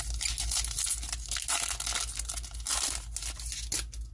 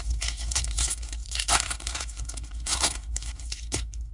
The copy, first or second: second